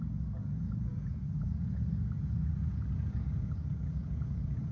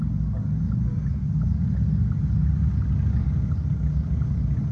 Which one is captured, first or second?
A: second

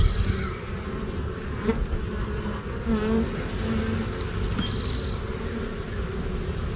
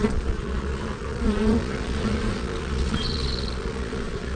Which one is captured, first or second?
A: first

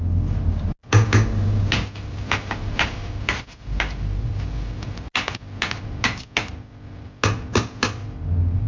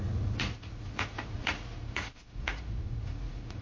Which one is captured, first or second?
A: first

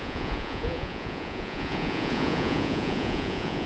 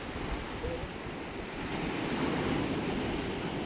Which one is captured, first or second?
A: second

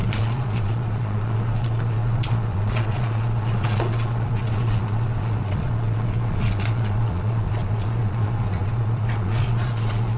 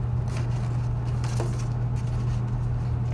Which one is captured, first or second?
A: second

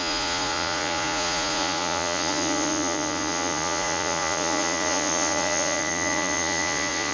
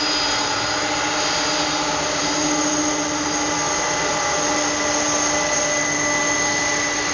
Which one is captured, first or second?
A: second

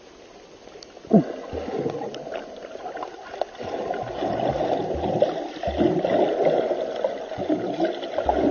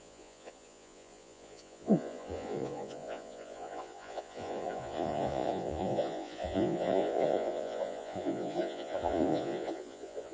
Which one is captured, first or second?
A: first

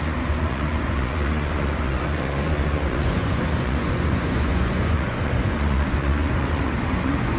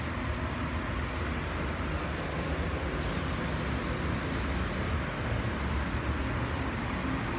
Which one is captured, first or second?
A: second